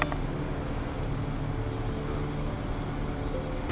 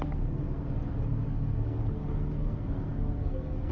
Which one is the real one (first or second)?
first